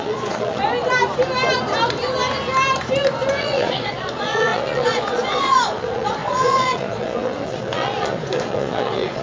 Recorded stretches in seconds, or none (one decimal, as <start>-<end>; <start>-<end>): 0.6-3.4